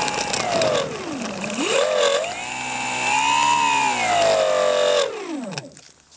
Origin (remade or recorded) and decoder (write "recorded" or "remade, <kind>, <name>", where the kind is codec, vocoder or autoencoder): recorded